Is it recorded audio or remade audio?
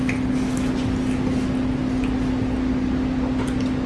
recorded